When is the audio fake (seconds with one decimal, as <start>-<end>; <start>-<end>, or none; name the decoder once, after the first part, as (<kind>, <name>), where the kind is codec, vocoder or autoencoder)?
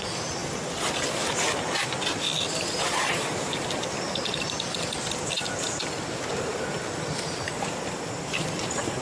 none